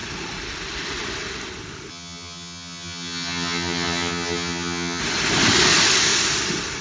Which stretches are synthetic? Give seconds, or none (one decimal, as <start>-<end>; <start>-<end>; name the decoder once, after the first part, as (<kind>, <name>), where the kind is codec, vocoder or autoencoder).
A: 1.9-5.0 (vocoder, HiFi-GAN)